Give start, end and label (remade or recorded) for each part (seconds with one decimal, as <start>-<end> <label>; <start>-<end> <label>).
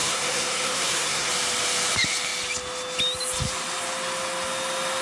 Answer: 0.0-1.3 remade; 1.3-5.0 recorded